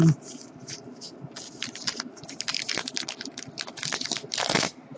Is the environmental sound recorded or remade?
recorded